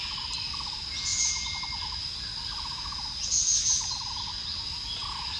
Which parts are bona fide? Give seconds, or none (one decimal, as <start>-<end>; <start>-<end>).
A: 0.0-5.4